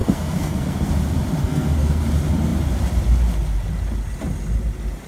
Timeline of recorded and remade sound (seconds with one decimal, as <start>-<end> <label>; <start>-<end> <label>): 0.0-0.9 remade; 0.9-1.4 recorded; 1.4-2.0 remade; 2.0-5.1 recorded